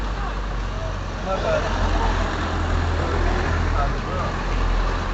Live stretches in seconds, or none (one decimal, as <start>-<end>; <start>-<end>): 0.0-5.1